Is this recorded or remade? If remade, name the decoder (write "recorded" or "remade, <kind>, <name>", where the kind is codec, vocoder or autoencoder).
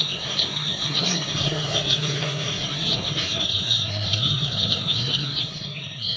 remade, codec, SNAC